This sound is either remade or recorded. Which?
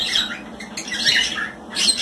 recorded